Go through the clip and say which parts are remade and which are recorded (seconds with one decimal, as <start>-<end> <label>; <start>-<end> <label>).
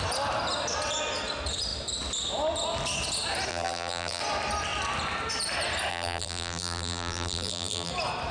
0.0-3.5 recorded; 3.5-4.2 remade; 4.2-5.9 recorded; 5.9-7.9 remade; 7.9-8.3 recorded